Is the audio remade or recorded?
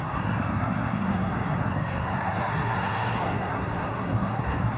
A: remade